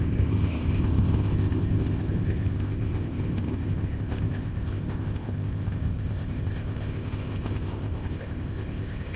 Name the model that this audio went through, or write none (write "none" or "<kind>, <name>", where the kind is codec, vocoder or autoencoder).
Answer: codec, ZipCodec